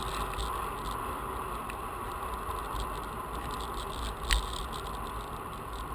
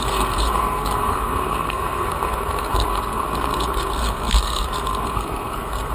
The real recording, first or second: first